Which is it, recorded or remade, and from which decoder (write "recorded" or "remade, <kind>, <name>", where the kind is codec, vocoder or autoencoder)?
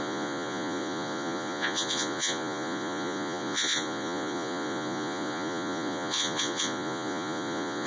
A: remade, vocoder, Vocos